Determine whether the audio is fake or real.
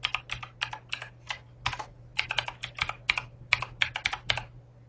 real